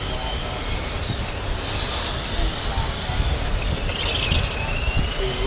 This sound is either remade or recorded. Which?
recorded